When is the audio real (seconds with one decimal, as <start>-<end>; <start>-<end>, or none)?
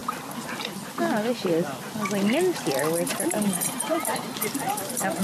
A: 0.0-3.1; 4.1-5.2